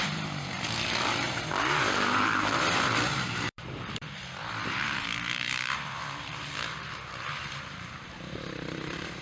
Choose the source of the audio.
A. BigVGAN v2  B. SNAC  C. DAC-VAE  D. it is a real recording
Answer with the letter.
A